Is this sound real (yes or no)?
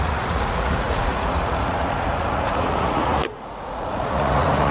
no